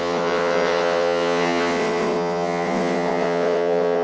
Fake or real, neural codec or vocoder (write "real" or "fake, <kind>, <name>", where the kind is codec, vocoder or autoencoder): fake, vocoder, WaveNeXt